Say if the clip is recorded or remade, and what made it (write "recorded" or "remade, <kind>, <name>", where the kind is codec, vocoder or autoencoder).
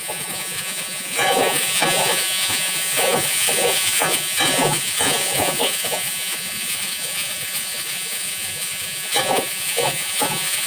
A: remade, vocoder, Vocos